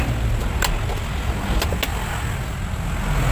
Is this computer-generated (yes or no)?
no